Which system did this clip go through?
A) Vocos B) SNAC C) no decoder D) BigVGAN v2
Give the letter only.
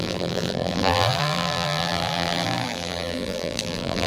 D